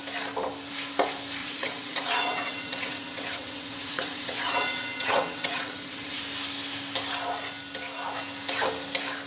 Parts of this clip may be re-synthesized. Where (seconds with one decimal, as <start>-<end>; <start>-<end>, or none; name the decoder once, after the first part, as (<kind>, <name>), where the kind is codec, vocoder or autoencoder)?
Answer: 1.4-6.2 (vocoder, WaveNeXt)